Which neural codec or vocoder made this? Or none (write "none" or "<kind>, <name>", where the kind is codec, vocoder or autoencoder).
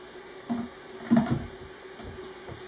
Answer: none